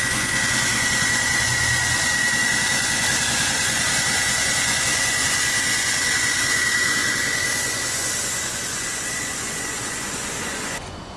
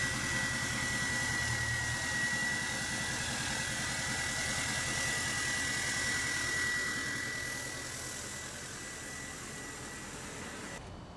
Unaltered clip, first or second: second